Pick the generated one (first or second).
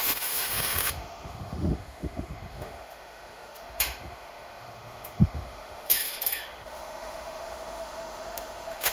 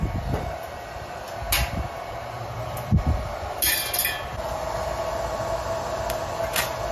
first